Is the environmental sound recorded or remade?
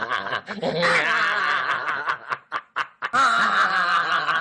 recorded